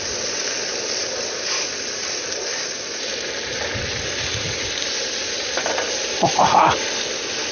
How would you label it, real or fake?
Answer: fake